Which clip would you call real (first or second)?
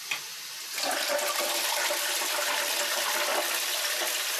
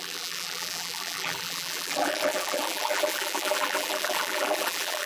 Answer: first